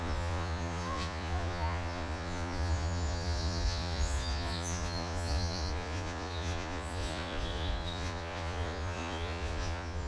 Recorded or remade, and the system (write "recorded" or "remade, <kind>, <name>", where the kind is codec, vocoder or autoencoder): remade, vocoder, Vocos